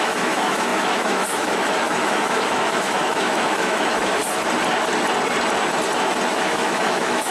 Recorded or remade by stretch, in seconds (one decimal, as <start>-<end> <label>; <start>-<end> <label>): 0.0-4.2 remade; 4.2-6.3 recorded; 6.3-7.3 remade